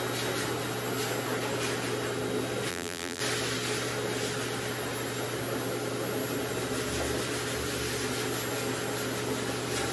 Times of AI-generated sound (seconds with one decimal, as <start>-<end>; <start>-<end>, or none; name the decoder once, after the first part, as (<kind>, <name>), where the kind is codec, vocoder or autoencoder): 2.7-3.2 (vocoder, BigVGAN v2)